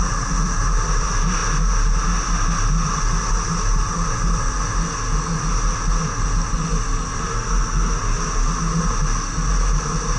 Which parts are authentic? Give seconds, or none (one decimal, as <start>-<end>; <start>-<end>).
0.0-10.2